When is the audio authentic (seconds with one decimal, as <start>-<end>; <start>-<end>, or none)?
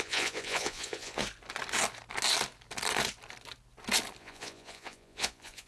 1.2-4.2